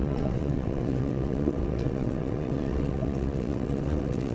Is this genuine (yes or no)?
no